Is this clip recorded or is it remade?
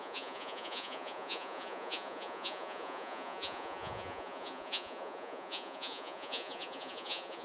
remade